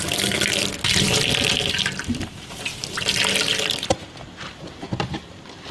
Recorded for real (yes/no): yes